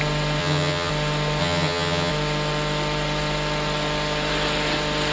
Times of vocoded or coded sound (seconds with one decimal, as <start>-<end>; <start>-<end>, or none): 0.4-0.9; 1.4-2.1